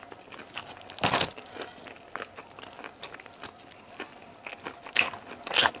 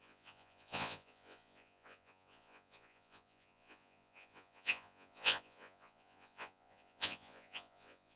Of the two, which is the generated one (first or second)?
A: second